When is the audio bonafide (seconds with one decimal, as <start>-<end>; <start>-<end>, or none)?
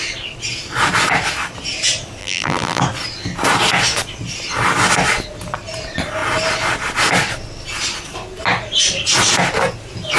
0.0-2.2; 2.8-10.2